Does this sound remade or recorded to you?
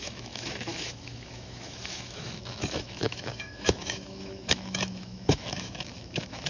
remade